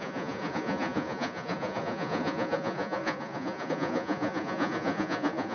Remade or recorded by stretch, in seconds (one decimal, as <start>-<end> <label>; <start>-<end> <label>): 0.0-5.5 remade